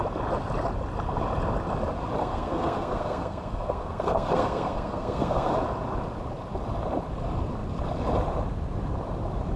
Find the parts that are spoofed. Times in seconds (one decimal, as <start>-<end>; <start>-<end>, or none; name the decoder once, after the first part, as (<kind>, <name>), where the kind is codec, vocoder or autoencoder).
2.2-5.5 (codec, SNAC)